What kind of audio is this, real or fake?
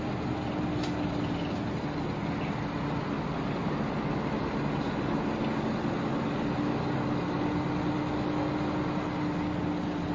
real